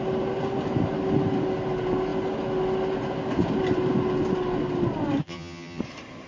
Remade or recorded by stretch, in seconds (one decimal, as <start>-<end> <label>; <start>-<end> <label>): 0.0-5.2 recorded; 5.2-5.8 remade; 5.8-6.3 recorded